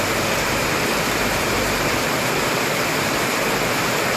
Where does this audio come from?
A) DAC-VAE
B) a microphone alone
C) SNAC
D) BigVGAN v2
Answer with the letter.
D